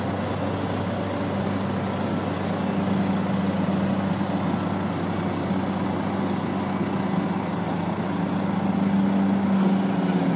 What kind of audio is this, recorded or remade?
recorded